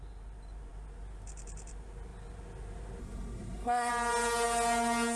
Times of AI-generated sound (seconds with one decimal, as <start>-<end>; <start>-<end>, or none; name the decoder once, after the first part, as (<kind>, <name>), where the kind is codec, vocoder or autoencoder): 3.0-3.9 (codec, SNAC)